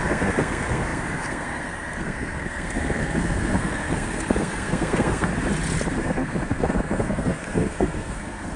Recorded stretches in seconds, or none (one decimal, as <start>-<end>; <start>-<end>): 5.3-5.9